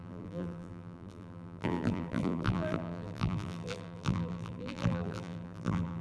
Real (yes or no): no